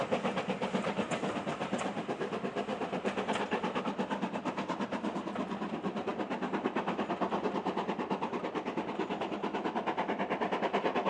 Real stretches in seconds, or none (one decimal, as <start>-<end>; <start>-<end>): 0.0-1.5; 2.1-2.7; 3.2-11.1